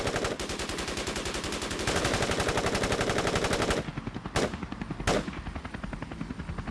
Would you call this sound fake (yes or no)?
no